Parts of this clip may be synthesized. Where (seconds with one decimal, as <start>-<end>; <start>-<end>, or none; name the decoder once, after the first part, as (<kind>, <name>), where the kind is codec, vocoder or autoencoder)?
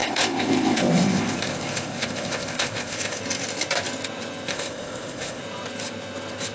0.0-3.2 (codec, ZipCodec); 4.5-5.4